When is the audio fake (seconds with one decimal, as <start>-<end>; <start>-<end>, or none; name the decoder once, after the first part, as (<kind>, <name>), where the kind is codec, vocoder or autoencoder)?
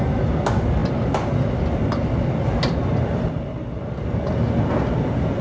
none